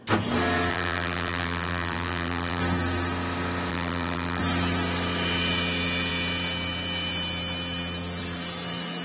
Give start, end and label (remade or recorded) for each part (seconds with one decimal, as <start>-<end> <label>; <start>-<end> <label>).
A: 0.0-0.7 recorded; 0.7-2.6 remade; 2.6-3.7 recorded; 3.7-4.4 remade; 4.4-9.0 recorded